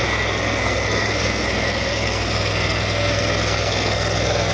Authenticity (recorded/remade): remade